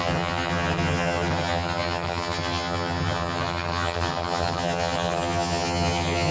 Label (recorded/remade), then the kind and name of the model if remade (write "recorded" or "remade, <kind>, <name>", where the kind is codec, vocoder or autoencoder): remade, vocoder, HiFi-GAN